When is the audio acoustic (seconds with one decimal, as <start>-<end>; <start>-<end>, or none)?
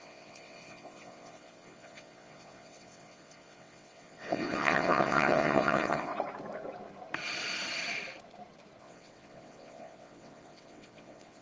6.1-8.8